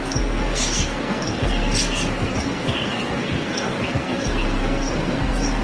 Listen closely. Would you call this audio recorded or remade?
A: remade